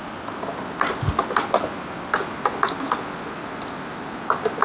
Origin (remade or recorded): recorded